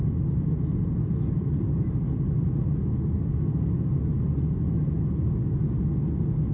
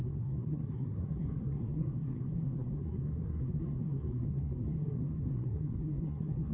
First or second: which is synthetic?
second